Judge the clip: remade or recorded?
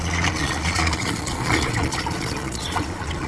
remade